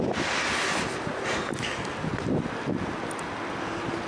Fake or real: real